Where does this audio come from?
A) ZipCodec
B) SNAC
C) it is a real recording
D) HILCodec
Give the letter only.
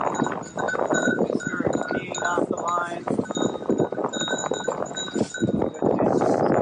C